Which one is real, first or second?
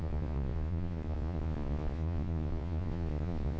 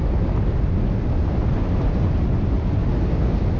second